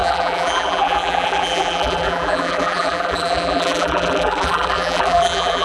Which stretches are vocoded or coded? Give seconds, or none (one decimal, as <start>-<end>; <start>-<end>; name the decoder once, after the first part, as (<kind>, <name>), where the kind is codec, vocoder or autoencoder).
0.0-5.6 (vocoder, BigVGAN v2)